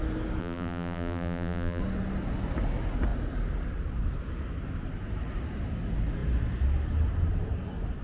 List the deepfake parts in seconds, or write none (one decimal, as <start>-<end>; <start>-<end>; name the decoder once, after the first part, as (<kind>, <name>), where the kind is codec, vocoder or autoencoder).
0.4-1.8 (vocoder, BigVGAN v2)